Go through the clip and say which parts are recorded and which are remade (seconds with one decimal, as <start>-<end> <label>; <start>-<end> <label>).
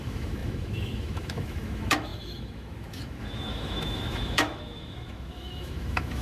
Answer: 0.0-6.2 remade